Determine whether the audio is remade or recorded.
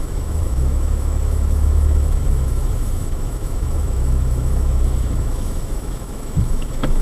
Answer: remade